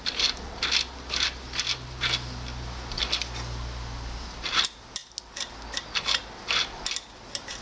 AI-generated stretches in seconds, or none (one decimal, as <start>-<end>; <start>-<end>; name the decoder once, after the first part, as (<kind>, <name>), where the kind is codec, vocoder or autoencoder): none